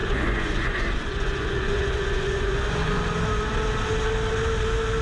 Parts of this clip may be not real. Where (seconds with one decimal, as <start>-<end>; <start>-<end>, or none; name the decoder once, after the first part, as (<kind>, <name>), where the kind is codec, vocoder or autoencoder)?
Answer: 0.0-3.0 (vocoder, Vocos)